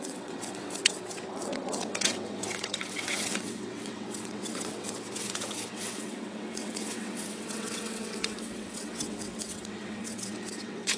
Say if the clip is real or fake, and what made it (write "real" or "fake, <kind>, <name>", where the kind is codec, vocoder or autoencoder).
fake, vocoder, WaveNeXt